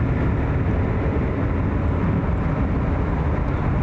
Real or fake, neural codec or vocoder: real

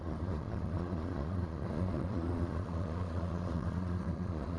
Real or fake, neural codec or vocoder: fake, vocoder, Vocos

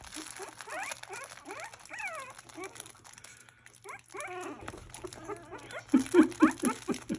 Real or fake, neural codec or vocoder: real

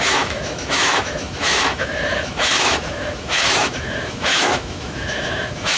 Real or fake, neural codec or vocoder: fake, autoencoder, DAC-VAE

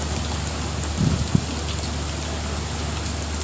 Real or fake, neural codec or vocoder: real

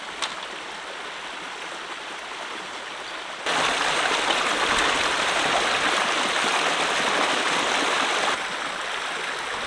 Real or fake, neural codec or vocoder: real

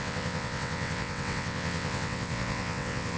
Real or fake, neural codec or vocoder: fake, vocoder, WaveNeXt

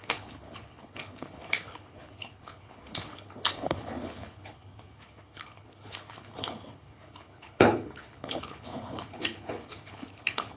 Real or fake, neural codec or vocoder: fake, codec, HILCodec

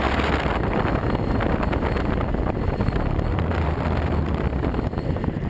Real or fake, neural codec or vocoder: fake, vocoder, BigVGAN v2